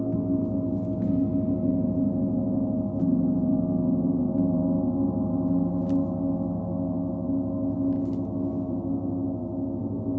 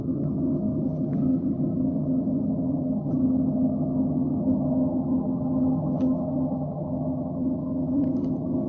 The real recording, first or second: first